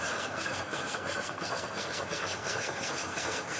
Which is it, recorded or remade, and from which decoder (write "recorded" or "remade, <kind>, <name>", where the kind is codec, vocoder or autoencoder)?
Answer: remade, codec, SNAC